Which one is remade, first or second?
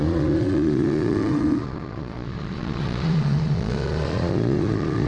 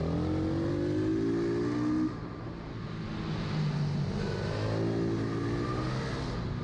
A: first